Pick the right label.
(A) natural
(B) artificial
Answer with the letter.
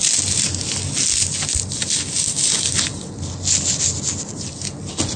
A